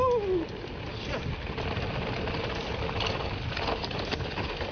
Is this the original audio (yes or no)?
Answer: yes